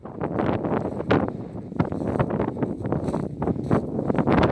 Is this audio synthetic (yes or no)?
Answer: no